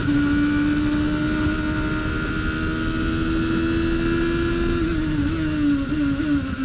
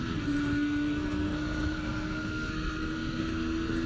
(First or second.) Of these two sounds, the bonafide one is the first